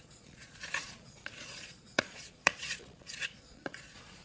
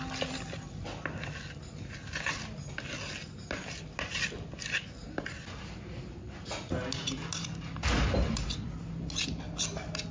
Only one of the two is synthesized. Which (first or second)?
first